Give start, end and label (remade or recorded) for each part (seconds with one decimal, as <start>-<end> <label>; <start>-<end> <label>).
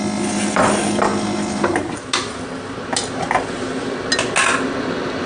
0.0-5.3 recorded